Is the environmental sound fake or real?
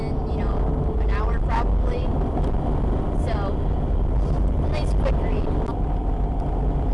real